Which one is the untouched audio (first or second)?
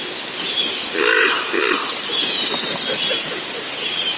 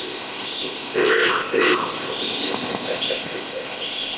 first